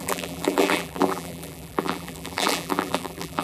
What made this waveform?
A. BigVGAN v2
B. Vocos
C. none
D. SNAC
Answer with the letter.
A